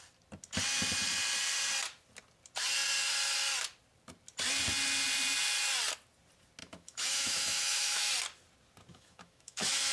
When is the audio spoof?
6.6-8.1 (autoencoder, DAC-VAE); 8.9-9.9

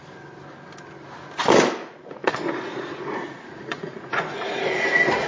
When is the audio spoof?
1.8-4.8 (vocoder, Vocos)

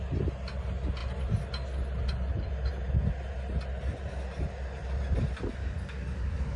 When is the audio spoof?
5.6-6.6 (codec, DAC)

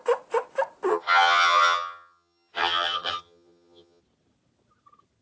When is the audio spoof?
0.9-4.0 (vocoder, HiFi-GAN)

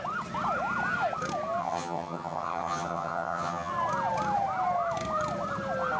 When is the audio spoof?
1.6-3.7 (vocoder, HiFi-GAN)

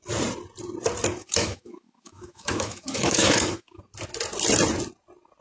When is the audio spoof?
1.2-3.8 (autoencoder, DAC-VAE)